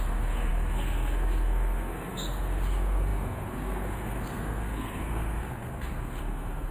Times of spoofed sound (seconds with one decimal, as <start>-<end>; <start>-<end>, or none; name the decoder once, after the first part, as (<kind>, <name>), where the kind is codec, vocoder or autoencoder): 0.0-6.7 (codec, SNAC)